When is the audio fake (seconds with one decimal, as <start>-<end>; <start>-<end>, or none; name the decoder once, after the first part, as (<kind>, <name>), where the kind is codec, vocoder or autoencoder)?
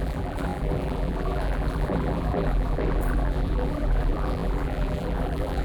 0.0-5.6 (vocoder, BigVGAN v2)